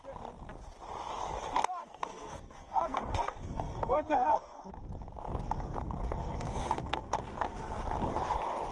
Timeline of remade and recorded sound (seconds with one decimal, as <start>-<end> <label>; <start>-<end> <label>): 0.0-1.8 recorded; 1.8-4.7 remade; 4.7-5.8 recorded; 5.8-7.8 remade; 7.8-8.7 recorded